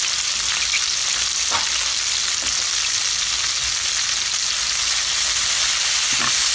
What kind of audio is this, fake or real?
real